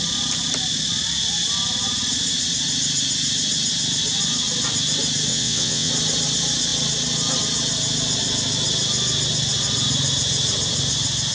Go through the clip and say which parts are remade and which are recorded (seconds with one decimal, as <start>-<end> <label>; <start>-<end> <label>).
0.0-5.3 recorded; 5.3-5.9 remade; 5.9-11.3 recorded